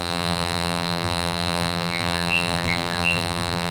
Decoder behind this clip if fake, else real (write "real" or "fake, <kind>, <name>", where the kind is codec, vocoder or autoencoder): fake, vocoder, BigVGAN v2